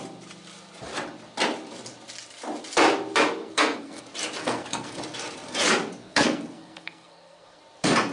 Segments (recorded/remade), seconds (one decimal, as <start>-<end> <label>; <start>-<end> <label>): 0.0-3.4 recorded; 3.4-4.0 remade; 4.0-4.4 recorded; 4.4-5.0 remade; 5.0-6.0 recorded; 6.0-7.6 remade; 7.6-8.1 recorded